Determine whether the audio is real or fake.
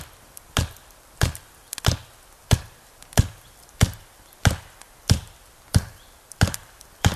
real